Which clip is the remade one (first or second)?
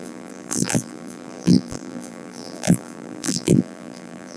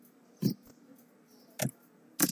first